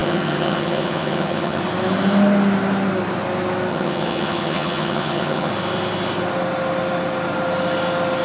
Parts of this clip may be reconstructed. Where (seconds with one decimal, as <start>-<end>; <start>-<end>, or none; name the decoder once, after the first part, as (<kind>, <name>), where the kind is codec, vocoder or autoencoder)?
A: 0.0-1.6 (vocoder, HiFi-GAN); 3.7-5.5